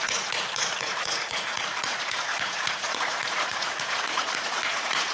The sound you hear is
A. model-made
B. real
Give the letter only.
A